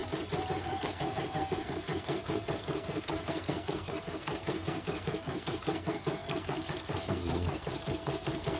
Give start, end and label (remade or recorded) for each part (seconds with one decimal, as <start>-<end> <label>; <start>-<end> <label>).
0.0-0.6 recorded; 0.6-8.6 remade